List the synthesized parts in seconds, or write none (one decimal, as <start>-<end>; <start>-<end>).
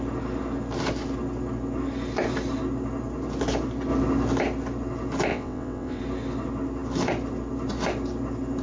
5.3-6.0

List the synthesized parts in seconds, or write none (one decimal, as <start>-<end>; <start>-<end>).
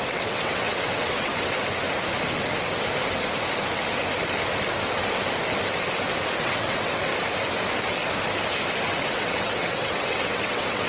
0.0-1.3; 6.4-7.1; 9.0-10.9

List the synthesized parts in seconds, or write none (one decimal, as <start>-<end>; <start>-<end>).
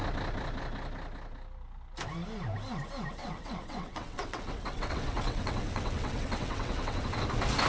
3.2-7.0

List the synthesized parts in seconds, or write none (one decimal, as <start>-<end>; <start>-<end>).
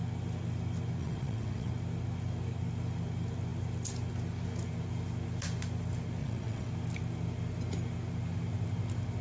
1.0-1.7; 6.2-6.7